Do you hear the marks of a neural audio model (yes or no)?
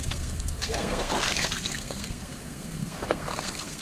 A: yes